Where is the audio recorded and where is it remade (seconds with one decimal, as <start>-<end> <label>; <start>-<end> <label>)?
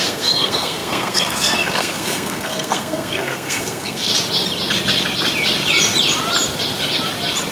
0.0-4.1 remade; 4.1-7.5 recorded